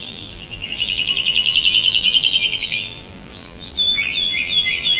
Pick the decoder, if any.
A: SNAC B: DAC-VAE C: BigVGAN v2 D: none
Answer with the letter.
C